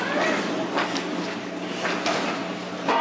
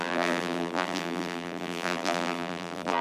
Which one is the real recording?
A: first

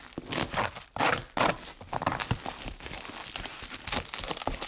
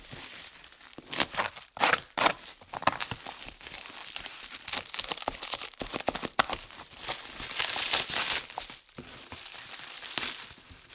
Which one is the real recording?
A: first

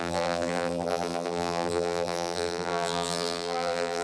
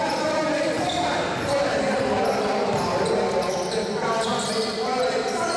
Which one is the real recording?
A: second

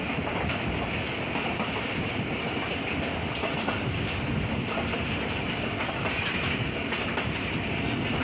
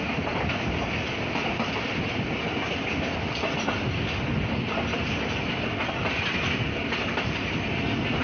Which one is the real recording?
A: second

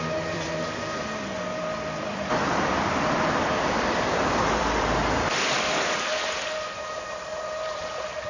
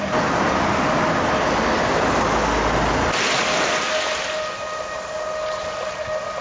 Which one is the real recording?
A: second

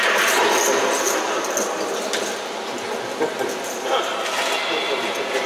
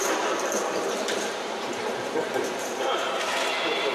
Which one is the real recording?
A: first